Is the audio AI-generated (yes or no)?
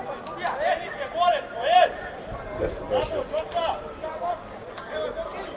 no